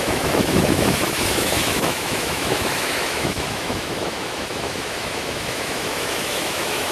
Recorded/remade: remade